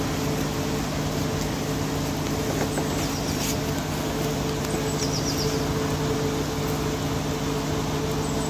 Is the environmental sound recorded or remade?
recorded